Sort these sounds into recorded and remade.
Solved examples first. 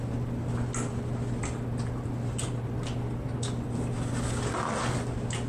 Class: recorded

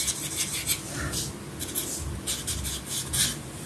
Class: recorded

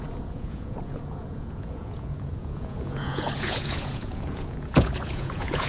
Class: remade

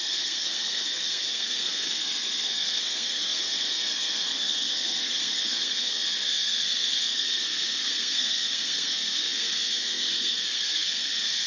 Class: remade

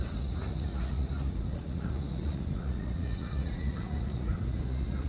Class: remade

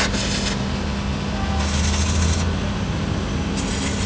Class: recorded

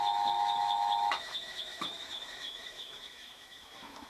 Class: remade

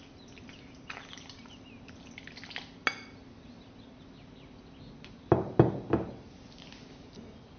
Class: recorded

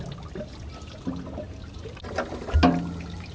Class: recorded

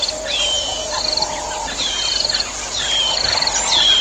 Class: recorded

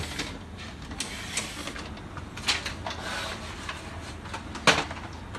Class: recorded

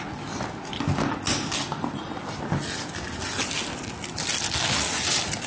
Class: recorded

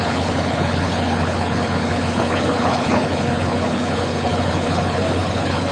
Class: remade